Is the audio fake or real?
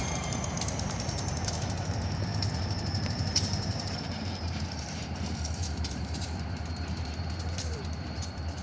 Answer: fake